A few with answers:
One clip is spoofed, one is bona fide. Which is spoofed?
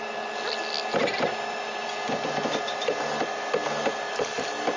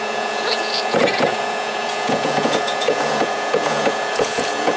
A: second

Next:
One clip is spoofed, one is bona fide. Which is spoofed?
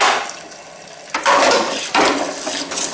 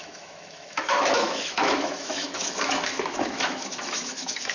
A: second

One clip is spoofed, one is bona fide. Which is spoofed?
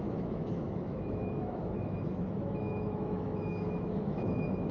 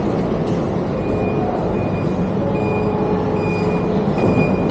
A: first